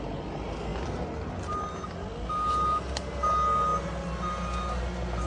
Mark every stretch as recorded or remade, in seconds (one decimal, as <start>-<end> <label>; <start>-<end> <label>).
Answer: 0.0-5.3 recorded